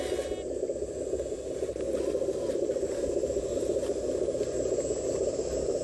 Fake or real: real